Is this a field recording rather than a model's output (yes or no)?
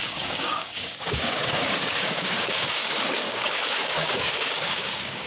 no